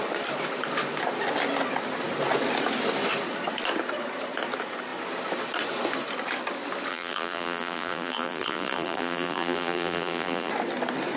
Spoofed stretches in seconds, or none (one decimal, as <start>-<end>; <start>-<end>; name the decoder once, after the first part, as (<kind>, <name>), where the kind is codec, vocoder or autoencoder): 6.9-10.5 (vocoder, BigVGAN v2)